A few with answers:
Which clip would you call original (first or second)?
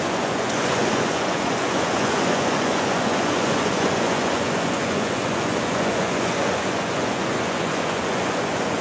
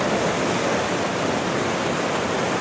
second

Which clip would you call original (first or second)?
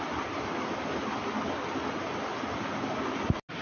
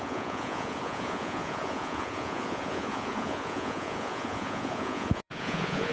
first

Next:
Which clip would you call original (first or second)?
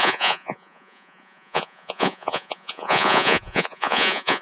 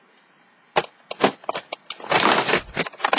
second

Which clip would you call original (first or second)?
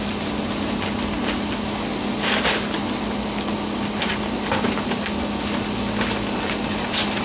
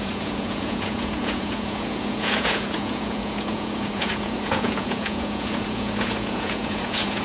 first